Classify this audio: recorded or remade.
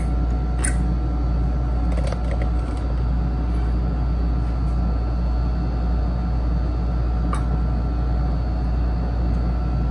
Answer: recorded